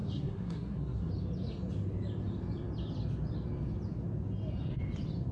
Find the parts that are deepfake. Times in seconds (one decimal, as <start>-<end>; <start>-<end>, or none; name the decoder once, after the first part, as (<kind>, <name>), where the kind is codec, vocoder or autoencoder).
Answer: 0.0-1.1 (codec, SNAC)